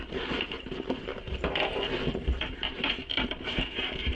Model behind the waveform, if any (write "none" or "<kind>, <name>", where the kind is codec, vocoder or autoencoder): vocoder, BigVGAN v2